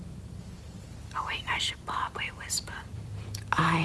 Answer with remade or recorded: remade